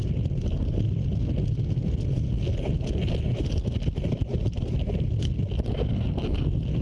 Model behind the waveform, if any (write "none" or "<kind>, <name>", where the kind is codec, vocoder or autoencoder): none